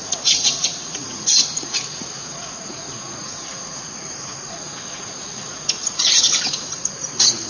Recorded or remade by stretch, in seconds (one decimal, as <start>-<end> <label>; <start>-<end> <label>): 0.0-7.5 remade